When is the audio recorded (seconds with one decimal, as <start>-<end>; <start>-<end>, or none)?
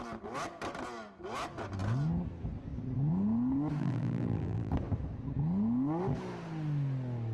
0.0-3.8; 4.7-7.3